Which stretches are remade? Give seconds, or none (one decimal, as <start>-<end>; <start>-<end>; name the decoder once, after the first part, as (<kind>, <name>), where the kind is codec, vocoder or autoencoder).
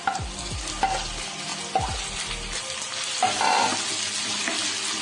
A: none